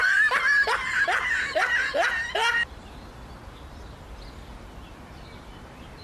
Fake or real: real